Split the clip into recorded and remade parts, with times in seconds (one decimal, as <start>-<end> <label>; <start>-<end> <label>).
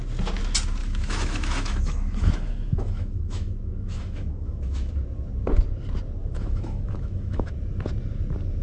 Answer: 0.0-0.8 recorded; 0.8-4.9 remade; 4.9-6.2 recorded; 6.2-7.5 remade; 7.5-8.6 recorded